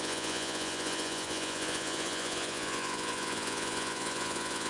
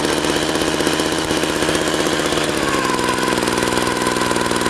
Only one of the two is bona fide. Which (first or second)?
second